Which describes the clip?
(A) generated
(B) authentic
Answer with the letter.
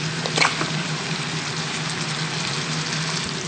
B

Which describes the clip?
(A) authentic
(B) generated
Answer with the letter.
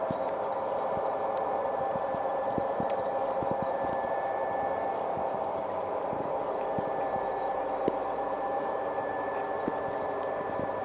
B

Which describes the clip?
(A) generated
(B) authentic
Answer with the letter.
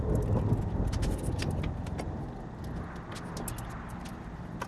B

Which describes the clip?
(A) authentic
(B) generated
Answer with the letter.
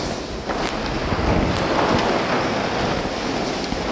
A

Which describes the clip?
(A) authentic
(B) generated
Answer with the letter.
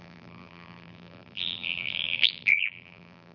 B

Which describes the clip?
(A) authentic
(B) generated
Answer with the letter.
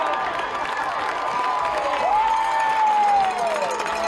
A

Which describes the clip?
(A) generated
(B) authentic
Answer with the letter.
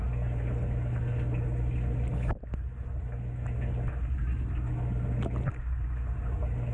B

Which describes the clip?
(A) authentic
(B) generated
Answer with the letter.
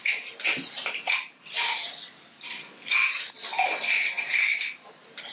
B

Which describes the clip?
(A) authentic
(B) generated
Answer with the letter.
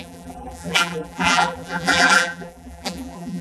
B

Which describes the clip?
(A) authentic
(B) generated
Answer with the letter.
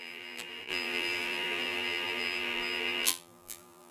B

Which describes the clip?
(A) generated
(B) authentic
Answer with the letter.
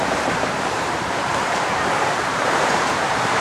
A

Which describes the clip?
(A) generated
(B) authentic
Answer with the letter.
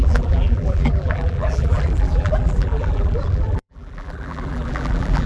A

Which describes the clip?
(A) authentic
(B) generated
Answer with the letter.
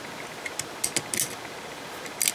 A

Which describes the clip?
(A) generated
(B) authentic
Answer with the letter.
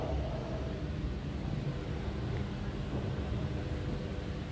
B